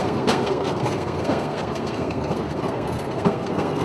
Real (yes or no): no